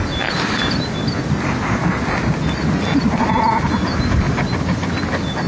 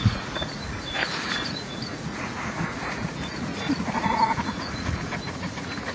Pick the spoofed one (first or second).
second